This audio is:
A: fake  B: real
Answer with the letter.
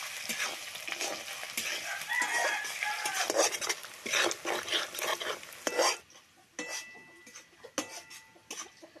B